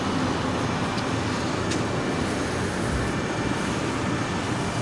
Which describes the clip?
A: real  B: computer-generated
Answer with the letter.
A